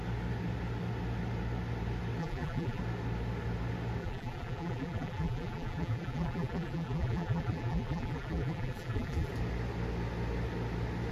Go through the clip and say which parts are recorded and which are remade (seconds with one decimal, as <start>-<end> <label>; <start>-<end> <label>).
0.0-2.2 recorded; 2.2-2.8 remade; 2.8-4.0 recorded; 4.0-9.3 remade; 9.3-11.1 recorded